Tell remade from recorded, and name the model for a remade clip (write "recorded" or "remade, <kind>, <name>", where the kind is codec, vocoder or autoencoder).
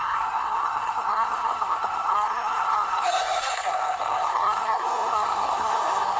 remade, codec, SNAC